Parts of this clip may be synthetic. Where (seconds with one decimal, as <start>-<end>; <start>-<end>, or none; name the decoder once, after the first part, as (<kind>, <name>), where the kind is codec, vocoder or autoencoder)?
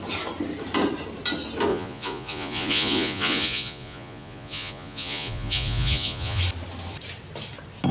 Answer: 1.7-6.4 (vocoder, Vocos)